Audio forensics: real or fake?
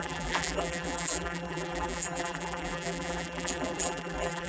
fake